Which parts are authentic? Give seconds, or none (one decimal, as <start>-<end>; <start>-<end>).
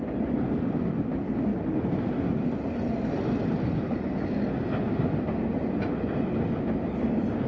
0.0-7.5